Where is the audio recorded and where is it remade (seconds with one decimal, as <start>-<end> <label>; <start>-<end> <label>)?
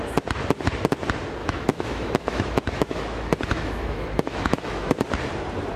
0.0-1.4 recorded; 1.4-4.9 remade; 4.9-5.8 recorded